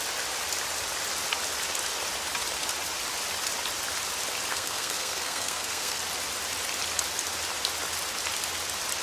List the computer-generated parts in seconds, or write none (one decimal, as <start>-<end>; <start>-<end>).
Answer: 4.5-6.0